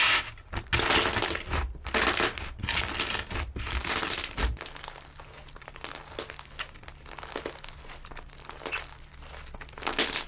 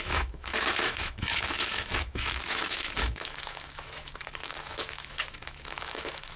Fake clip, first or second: second